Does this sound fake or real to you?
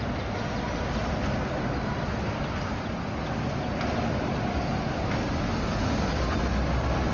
real